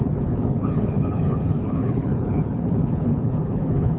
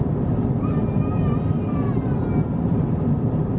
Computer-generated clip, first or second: first